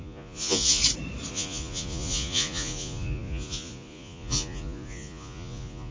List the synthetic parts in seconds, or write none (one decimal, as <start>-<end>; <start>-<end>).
0.0-0.8; 1.3-5.9